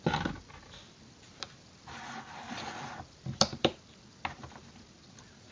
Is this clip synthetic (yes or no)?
no